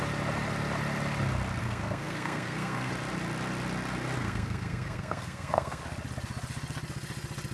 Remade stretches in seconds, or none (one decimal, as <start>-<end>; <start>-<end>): 1.6-2.9; 4.2-5.8